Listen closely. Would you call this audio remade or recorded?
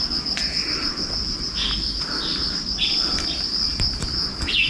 recorded